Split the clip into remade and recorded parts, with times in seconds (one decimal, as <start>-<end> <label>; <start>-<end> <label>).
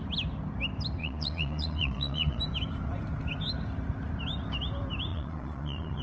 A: 0.0-1.0 recorded; 1.0-2.4 remade; 2.4-5.1 recorded; 5.1-6.0 remade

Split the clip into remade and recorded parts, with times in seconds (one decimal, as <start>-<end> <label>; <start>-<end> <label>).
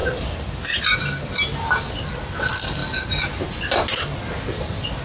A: 0.0-5.0 recorded